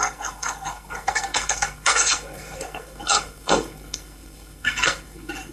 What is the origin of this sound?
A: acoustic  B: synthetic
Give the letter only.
B